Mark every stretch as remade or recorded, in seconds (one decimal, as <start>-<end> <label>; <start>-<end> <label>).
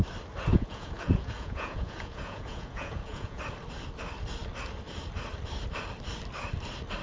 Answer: 0.0-0.5 recorded; 0.5-3.4 remade; 3.4-7.0 recorded